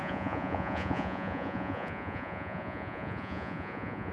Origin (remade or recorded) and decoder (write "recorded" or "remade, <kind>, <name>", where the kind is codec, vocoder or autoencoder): remade, vocoder, Vocos